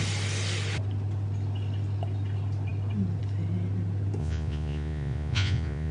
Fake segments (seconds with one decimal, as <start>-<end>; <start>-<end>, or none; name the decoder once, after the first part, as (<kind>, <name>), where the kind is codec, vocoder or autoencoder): 4.2-5.9 (vocoder, Vocos)